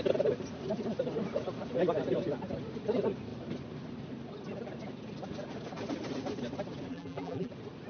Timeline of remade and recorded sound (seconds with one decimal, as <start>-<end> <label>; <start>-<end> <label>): 0.0-6.9 recorded; 6.9-7.5 remade; 7.5-7.9 recorded